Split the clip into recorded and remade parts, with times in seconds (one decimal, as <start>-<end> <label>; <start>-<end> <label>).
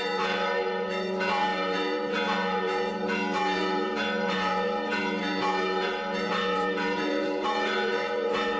0.0-8.6 remade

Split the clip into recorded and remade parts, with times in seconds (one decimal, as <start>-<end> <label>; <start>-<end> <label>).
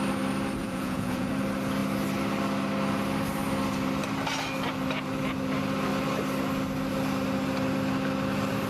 0.0-0.6 recorded; 0.6-1.3 remade; 1.3-8.7 recorded